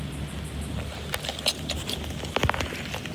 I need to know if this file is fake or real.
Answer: real